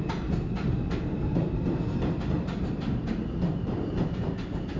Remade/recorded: recorded